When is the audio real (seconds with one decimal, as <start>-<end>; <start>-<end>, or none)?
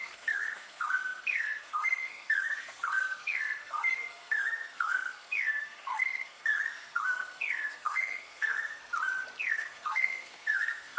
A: 8.8-9.4